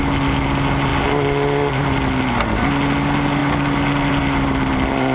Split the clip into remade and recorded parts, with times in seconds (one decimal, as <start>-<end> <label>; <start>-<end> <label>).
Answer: 0.0-5.1 recorded